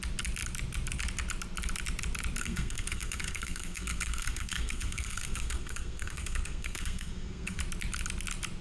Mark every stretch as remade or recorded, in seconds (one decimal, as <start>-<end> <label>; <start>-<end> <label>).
0.0-2.4 recorded; 2.4-7.6 remade; 7.6-8.6 recorded